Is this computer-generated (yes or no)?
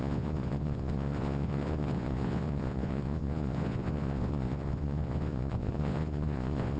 yes